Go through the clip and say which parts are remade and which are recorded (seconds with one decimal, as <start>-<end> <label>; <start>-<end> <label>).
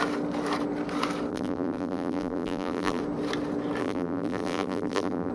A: 0.0-1.3 recorded; 1.3-3.0 remade; 3.0-3.8 recorded; 3.8-5.3 remade